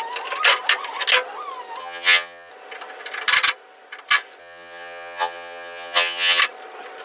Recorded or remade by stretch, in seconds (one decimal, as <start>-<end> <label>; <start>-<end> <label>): 0.0-1.8 recorded; 1.8-2.5 remade; 2.5-4.4 recorded; 4.4-6.4 remade; 6.4-7.0 recorded